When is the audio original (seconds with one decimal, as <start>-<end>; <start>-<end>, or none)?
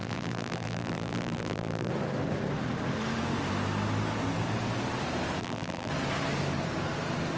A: 1.9-5.4; 5.9-7.4